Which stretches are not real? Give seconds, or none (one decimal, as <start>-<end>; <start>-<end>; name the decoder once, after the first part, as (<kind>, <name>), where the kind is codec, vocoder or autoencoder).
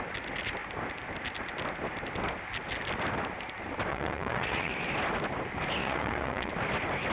3.9-4.7 (vocoder, Vocos); 5.8-6.5